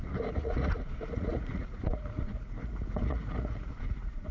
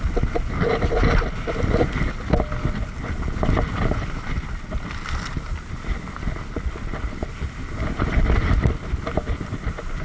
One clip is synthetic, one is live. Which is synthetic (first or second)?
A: first